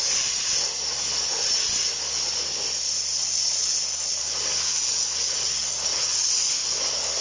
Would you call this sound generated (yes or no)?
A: no